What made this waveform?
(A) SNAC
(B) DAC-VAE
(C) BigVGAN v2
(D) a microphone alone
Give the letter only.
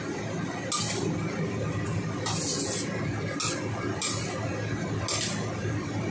D